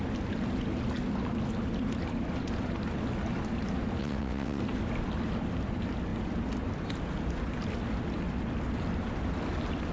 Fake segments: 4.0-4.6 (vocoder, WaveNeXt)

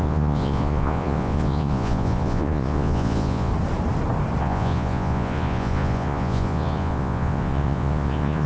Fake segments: 0.0-3.5 (vocoder, Vocos); 4.4-8.5